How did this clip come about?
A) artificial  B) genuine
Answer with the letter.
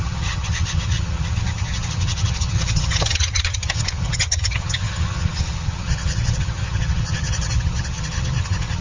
A